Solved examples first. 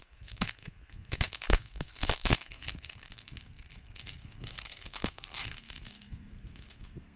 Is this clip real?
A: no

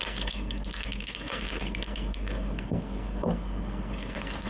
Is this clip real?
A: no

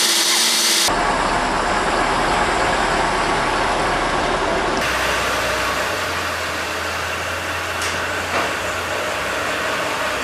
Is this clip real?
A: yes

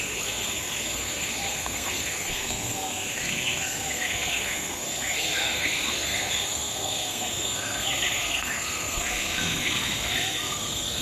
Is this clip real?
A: no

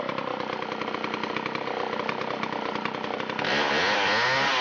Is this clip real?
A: yes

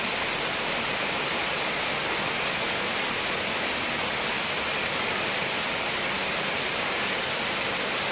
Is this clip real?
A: yes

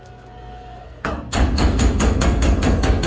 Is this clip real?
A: no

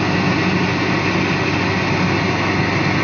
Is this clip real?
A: yes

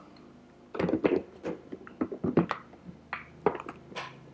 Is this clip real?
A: yes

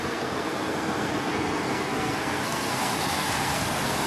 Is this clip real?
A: no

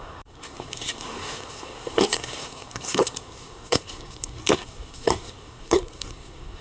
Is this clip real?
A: no